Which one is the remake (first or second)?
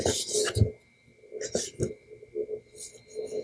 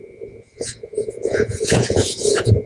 second